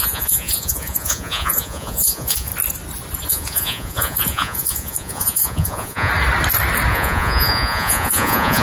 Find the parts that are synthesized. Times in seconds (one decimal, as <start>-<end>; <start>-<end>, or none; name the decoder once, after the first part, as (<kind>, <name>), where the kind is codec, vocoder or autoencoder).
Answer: 0.0-2.5 (vocoder, Vocos); 3.3-6.1; 6.9-8.6